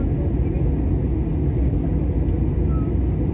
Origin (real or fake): real